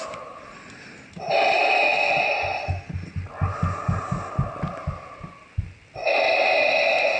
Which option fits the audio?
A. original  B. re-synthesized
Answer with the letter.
A